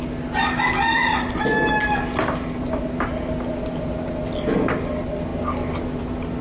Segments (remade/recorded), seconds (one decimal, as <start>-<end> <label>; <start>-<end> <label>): 0.0-6.4 recorded